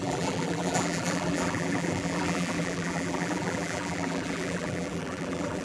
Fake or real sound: fake